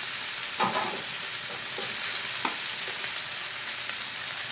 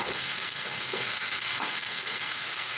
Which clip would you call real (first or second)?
first